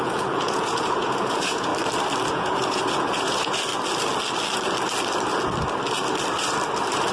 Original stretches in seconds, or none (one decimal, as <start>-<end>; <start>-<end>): 1.7-2.3; 3.7-7.1